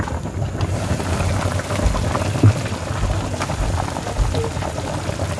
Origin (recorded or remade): recorded